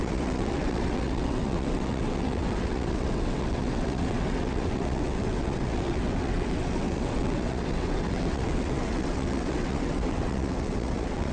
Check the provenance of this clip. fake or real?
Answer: fake